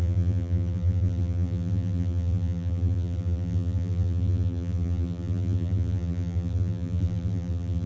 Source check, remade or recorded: remade